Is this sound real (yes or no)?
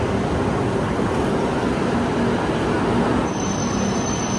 yes